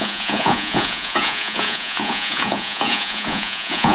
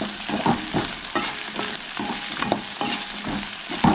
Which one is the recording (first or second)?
second